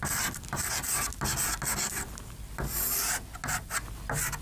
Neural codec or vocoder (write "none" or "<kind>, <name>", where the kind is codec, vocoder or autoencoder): none